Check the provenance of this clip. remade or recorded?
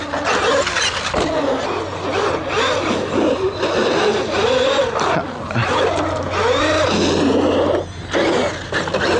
recorded